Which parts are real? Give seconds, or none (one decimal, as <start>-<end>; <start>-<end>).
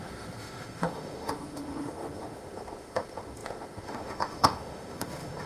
none